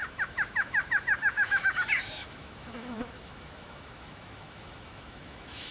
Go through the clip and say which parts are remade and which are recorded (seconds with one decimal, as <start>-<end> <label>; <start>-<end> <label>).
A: 0.0-5.7 remade